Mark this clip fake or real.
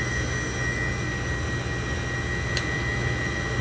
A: real